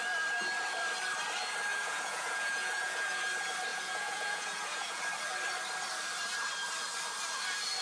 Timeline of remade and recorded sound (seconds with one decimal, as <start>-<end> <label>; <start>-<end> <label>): 0.0-1.7 recorded; 1.7-3.2 remade; 3.2-3.7 recorded; 3.7-5.0 remade; 5.0-7.8 recorded